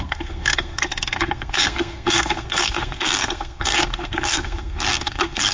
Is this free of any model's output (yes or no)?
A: no